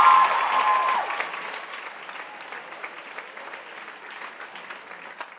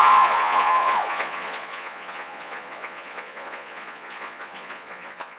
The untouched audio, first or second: first